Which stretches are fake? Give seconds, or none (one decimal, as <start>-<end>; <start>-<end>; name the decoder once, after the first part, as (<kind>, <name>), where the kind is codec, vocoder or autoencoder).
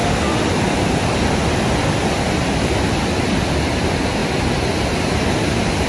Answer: 0.0-1.5 (vocoder, BigVGAN v2)